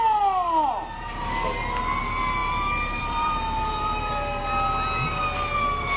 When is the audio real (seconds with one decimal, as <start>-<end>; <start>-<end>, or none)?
0.0-2.4; 4.0-6.0